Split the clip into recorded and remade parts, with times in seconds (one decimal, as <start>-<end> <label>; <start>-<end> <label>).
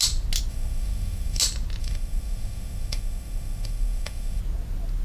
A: 0.0-0.5 recorded; 0.5-1.4 remade; 1.4-1.8 recorded; 1.8-4.4 remade; 4.4-5.0 recorded